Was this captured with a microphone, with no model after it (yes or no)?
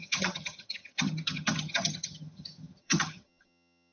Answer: no